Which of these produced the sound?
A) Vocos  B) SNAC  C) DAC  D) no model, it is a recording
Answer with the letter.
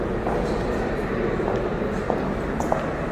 D